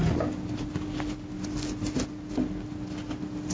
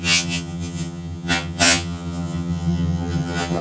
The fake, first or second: second